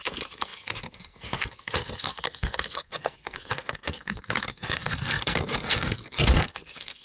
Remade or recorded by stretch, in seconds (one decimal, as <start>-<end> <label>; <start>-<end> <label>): 0.0-7.0 remade